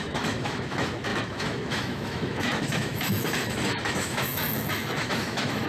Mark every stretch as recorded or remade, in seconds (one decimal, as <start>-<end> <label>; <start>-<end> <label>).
0.0-5.7 remade